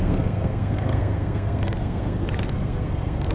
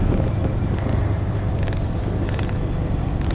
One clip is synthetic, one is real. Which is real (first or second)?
second